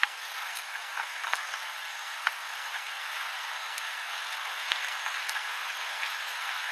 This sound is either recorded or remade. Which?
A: remade